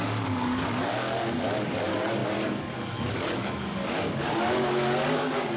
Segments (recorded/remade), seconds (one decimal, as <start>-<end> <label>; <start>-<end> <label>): 0.0-5.6 remade